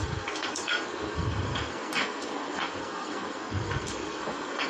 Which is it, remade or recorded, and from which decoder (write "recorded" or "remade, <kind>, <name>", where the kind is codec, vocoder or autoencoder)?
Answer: remade, codec, SNAC